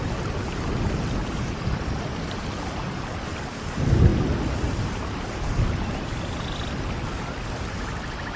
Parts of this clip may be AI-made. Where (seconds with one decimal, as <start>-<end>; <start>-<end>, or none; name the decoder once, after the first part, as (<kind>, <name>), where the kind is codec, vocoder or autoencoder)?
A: none